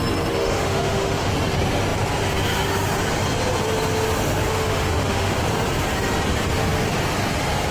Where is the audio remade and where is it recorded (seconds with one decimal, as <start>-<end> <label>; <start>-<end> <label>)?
0.0-0.4 recorded; 0.4-1.3 remade; 1.3-4.5 recorded; 4.5-5.4 remade; 5.4-7.7 recorded